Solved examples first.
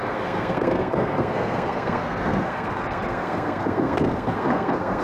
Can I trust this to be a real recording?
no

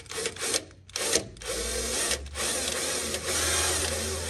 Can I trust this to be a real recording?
yes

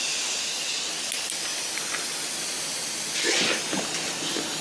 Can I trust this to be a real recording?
yes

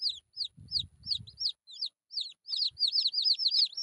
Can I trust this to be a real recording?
yes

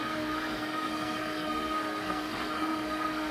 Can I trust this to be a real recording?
no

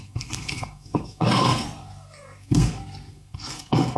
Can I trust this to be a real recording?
no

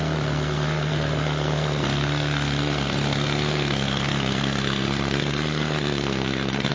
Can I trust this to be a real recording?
no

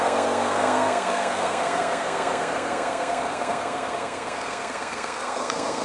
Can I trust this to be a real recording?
no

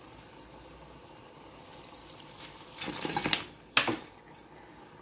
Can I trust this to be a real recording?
yes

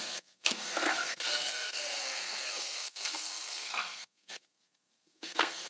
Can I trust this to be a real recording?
no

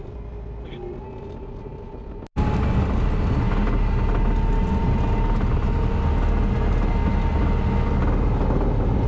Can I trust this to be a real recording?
yes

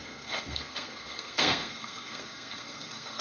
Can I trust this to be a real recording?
no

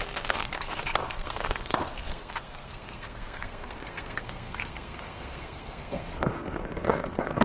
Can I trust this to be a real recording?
no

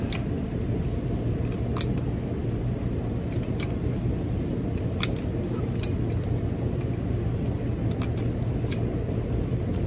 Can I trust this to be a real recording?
yes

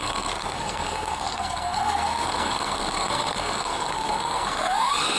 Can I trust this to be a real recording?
no